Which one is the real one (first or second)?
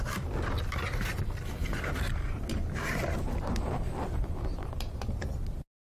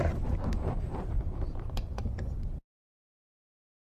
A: first